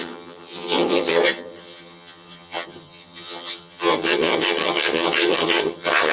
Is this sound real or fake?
fake